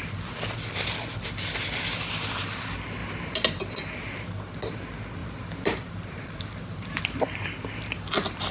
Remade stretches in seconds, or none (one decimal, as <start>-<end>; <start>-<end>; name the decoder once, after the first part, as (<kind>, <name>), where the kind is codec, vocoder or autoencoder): 5.2-7.0 (vocoder, BigVGAN v2)